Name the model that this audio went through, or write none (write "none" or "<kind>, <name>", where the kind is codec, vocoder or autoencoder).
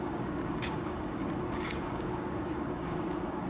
codec, DAC